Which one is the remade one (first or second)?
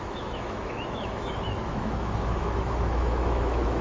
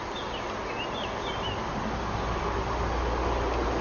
first